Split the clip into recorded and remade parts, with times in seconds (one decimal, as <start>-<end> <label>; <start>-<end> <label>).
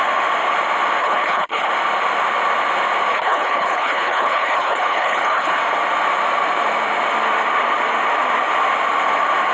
0.0-1.0 recorded; 1.0-1.7 remade; 1.7-3.1 recorded; 3.1-5.6 remade; 5.6-9.5 recorded